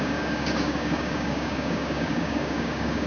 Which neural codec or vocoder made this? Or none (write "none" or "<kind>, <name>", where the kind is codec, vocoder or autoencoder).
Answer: codec, DAC